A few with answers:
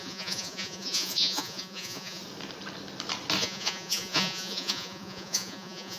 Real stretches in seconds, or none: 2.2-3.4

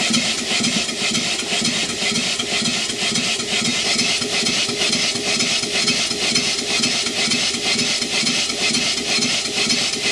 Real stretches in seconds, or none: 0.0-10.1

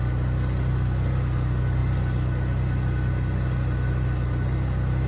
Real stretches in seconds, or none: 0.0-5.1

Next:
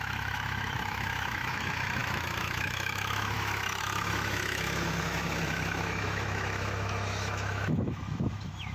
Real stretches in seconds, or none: none

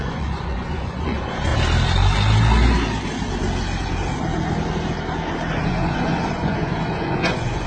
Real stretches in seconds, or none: 1.5-5.6

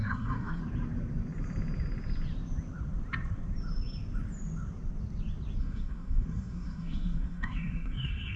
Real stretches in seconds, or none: 0.6-5.6

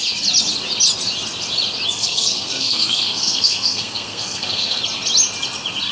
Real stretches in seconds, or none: 0.0-2.0; 4.8-5.9

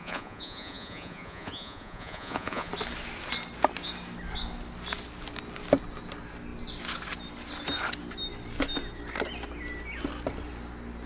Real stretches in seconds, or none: 2.7-11.1